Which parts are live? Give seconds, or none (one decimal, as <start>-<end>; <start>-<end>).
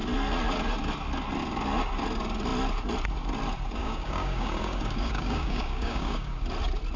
0.0-3.8; 6.4-7.0